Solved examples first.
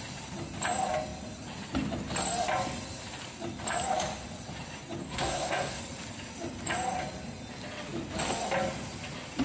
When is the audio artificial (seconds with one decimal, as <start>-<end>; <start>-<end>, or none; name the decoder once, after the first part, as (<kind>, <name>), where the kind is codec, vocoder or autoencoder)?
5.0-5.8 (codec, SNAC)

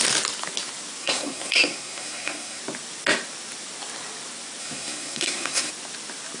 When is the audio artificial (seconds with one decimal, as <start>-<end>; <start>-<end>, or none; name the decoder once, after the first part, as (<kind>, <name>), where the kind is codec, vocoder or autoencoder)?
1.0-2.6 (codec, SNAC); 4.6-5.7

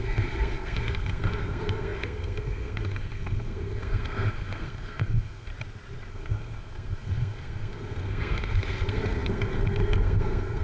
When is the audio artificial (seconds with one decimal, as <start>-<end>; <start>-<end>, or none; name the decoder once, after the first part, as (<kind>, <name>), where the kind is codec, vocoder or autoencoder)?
0.0-5.5 (codec, SNAC); 6.1-10.6

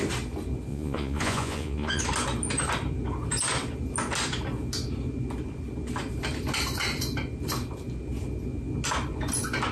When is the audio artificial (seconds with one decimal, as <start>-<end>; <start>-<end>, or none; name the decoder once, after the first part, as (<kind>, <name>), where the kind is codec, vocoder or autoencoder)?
0.7-2.0 (vocoder, Vocos)

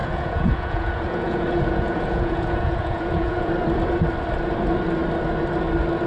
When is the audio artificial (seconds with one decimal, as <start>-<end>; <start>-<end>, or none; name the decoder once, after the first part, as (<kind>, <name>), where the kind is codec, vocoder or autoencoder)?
0.0-3.5 (vocoder, Vocos)

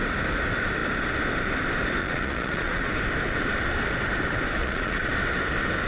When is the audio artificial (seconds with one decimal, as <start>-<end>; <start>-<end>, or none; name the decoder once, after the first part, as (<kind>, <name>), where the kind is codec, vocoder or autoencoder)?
2.0-2.9 (vocoder, Vocos); 4.6-5.1

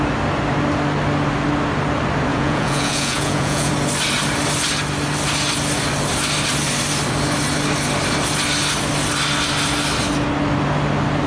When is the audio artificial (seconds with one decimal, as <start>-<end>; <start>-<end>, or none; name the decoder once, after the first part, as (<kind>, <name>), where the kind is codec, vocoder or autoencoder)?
2.3-3.7 (vocoder, Vocos)

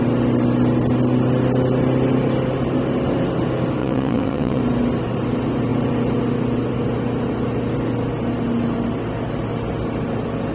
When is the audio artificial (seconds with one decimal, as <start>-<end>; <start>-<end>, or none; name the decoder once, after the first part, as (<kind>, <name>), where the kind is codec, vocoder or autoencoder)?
3.8-4.6 (vocoder, WaveNeXt)